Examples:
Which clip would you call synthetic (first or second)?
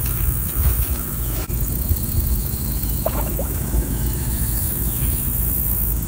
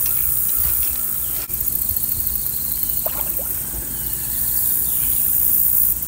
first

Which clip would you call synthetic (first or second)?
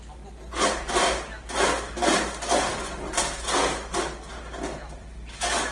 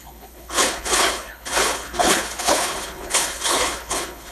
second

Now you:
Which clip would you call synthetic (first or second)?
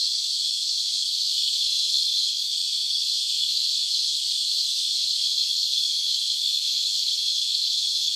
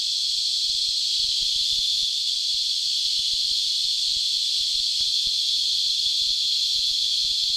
first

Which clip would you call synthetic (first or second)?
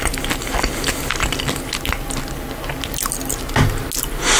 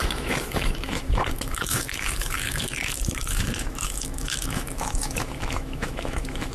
second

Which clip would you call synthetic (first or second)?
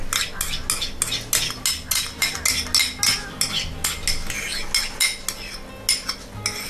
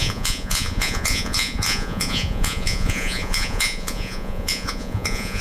second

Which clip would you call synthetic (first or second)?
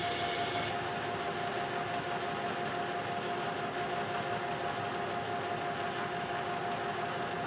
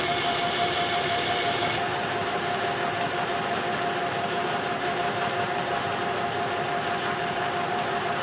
second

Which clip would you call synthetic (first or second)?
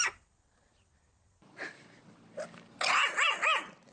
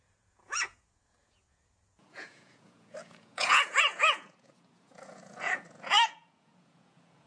second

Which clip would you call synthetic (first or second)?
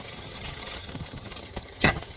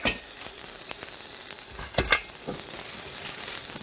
first